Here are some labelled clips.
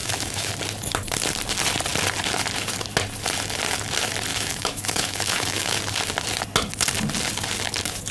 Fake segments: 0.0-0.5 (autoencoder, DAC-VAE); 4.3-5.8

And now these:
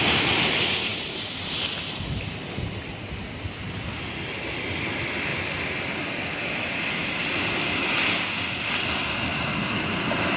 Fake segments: none

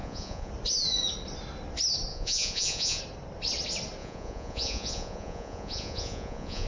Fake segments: 0.0-0.5 (vocoder, Vocos); 2.1-3.0; 4.0-6.7

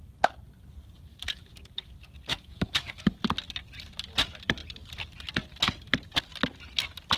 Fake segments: 2.3-3.0 (autoencoder, DAC-VAE)

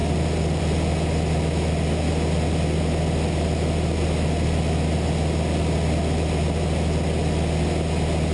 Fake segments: none

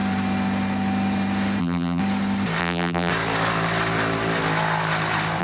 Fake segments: 1.6-2.0 (vocoder, BigVGAN v2); 2.6-3.1